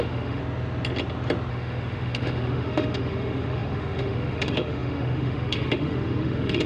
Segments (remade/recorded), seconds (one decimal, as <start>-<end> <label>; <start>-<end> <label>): 0.0-0.4 remade; 0.4-1.5 recorded; 1.5-6.7 remade